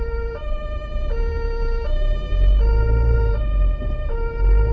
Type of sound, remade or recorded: recorded